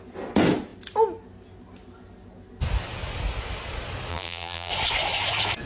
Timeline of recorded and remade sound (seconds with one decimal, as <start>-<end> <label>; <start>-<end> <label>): 0.0-4.1 recorded; 4.1-4.7 remade; 4.7-5.7 recorded